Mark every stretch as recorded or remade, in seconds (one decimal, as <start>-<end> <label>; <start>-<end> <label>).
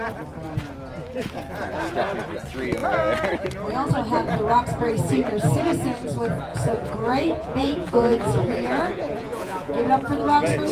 0.0-6.5 recorded; 6.5-9.9 remade; 9.9-10.7 recorded